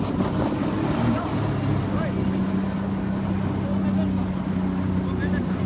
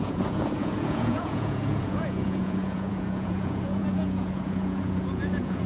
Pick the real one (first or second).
first